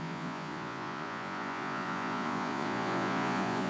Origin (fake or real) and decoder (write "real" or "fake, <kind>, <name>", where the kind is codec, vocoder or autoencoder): fake, vocoder, Vocos